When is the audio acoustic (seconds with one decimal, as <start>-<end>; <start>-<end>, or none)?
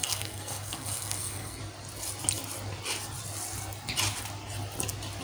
1.6-5.2